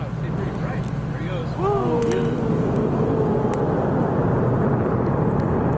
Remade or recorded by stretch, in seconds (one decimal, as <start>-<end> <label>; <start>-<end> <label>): 0.0-5.8 recorded